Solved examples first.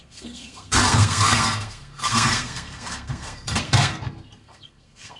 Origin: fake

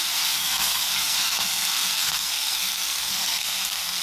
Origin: fake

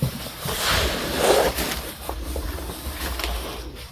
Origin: real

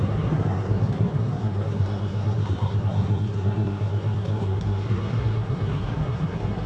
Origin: fake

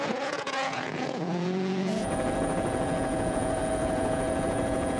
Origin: fake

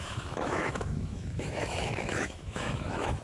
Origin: fake